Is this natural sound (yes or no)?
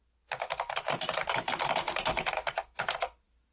yes